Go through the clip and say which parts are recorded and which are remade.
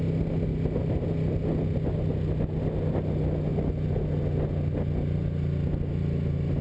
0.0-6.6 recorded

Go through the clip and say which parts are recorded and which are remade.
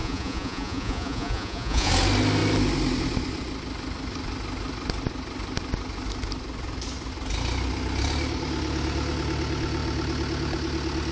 0.0-1.9 remade; 1.9-11.1 recorded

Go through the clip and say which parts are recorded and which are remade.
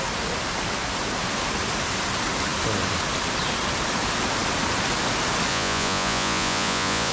0.0-5.5 recorded; 5.5-7.1 remade